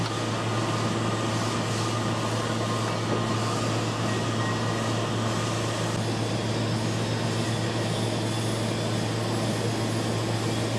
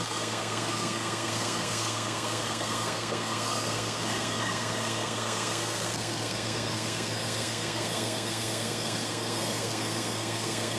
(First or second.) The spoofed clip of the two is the second